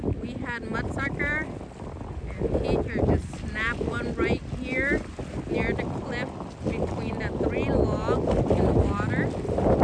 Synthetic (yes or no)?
no